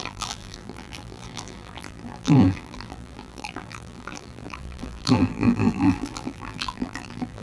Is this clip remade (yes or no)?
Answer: yes